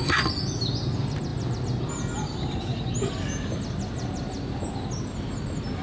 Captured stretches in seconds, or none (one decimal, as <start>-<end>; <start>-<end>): 0.0-5.8